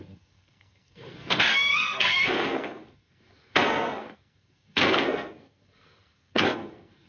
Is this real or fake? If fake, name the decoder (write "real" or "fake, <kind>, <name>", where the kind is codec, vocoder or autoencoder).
fake, codec, SNAC